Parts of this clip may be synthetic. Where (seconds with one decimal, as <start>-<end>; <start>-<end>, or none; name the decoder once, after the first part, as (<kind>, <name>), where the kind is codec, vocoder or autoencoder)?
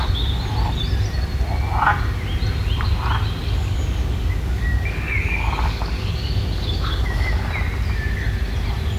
3.4-7.4 (codec, DAC)